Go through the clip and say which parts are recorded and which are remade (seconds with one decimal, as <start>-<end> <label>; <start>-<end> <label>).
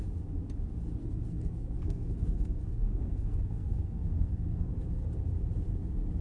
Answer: 0.0-1.0 recorded; 1.0-4.7 remade; 4.7-6.2 recorded